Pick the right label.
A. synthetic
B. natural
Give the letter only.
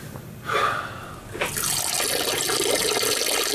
B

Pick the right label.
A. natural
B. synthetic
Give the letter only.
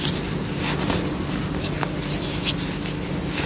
A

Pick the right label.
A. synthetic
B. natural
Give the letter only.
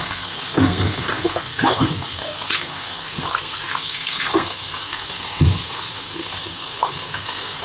A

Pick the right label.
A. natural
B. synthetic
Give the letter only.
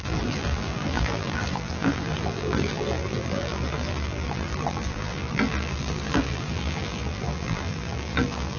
B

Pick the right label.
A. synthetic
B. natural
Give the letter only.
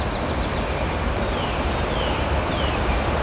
B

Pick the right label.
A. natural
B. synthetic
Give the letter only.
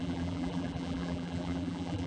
B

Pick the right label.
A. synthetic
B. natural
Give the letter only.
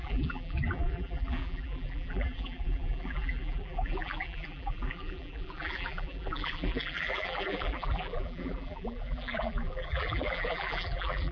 A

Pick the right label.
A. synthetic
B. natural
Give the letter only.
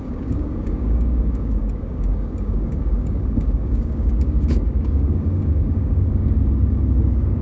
A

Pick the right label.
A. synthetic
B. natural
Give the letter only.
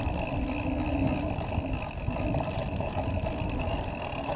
B